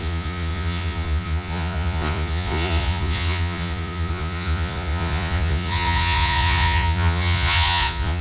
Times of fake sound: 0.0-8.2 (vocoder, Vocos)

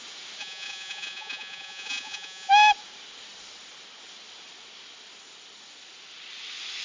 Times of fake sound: 0.4-2.5 (vocoder, Vocos)